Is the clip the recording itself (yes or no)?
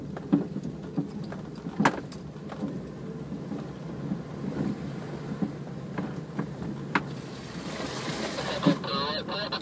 yes